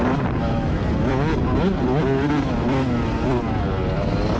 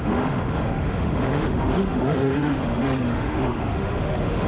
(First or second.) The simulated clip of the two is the second